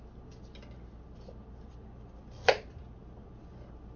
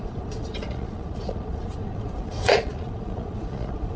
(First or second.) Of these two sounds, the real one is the first